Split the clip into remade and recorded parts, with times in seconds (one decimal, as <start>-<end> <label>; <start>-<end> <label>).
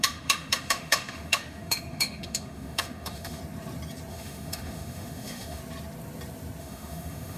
0.0-3.4 remade; 3.4-4.1 recorded; 4.1-5.6 remade; 5.6-6.6 recorded; 6.6-7.4 remade